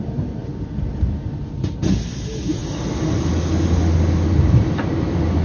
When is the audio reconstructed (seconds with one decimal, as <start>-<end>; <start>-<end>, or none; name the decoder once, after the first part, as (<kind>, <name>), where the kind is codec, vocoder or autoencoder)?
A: 0.0-0.4 (vocoder, BigVGAN v2); 2.1-2.6; 5.0-5.4